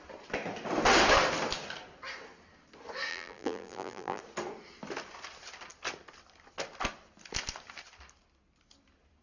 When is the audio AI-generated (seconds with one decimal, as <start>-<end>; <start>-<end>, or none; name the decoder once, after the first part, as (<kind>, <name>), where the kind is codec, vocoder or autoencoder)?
3.1-4.2 (vocoder, BigVGAN v2)